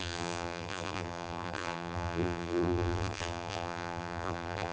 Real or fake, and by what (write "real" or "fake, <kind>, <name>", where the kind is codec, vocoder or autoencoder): fake, vocoder, BigVGAN v2